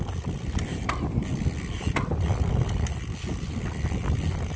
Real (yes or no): yes